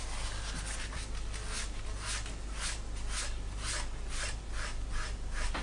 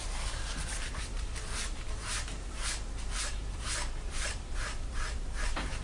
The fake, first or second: second